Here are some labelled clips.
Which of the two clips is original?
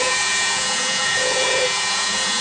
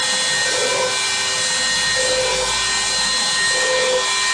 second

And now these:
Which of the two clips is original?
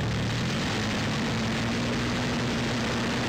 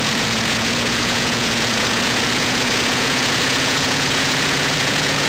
first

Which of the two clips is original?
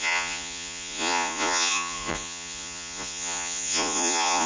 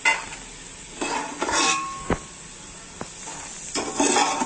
second